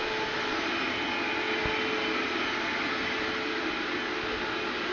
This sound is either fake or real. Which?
real